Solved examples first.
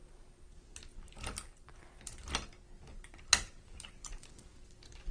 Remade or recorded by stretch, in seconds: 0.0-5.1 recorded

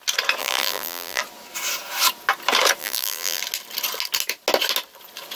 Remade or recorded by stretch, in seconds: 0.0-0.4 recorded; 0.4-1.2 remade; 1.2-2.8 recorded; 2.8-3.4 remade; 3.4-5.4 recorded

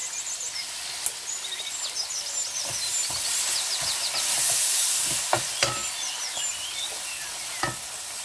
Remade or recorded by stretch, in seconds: 0.0-8.2 recorded

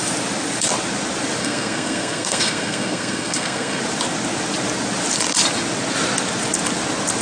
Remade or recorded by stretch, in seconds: 0.0-1.4 recorded; 1.4-3.8 remade; 3.8-7.2 recorded

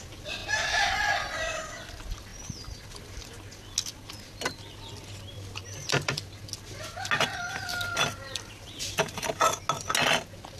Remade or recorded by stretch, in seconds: 0.0-5.6 recorded; 5.6-6.1 remade; 6.1-7.7 recorded; 7.7-9.0 remade; 9.0-10.6 recorded

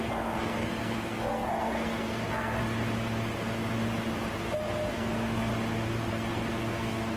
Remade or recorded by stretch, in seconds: 0.0-2.6 remade; 2.6-4.9 recorded; 4.9-5.5 remade; 5.5-6.1 recorded; 6.1-7.2 remade

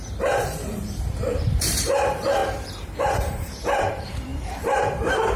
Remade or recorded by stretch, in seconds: 0.0-5.4 remade